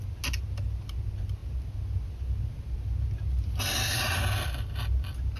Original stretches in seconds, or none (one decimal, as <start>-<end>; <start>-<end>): 0.0-5.4